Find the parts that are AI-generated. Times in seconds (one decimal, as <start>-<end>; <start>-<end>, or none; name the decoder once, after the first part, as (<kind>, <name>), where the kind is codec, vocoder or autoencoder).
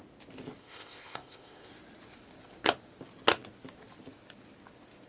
0.6-1.7 (codec, ZipCodec)